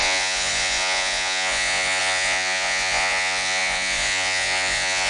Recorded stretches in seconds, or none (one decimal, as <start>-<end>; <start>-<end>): none